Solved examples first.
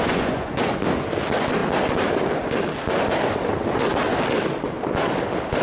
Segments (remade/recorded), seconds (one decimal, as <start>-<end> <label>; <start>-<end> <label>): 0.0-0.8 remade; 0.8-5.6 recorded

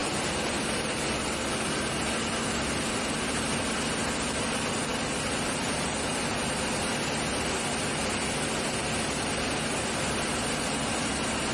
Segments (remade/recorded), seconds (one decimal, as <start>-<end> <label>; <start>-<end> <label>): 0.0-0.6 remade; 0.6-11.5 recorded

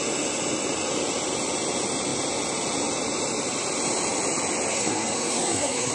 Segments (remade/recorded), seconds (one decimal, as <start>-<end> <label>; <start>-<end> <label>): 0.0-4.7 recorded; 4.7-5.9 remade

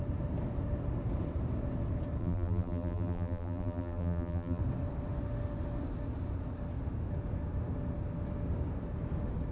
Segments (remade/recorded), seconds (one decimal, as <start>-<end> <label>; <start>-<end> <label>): 0.0-2.2 recorded; 2.2-4.6 remade; 4.6-9.5 recorded

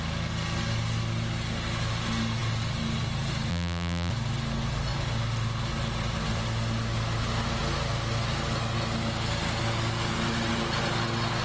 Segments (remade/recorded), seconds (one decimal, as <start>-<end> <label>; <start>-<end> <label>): 0.0-3.5 recorded; 3.5-4.1 remade; 4.1-11.4 recorded